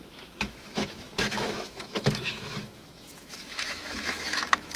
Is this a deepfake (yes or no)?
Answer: yes